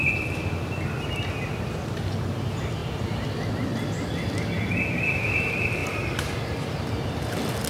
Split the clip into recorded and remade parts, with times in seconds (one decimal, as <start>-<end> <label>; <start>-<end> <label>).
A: 0.0-5.8 recorded; 5.8-6.8 remade; 6.8-7.7 recorded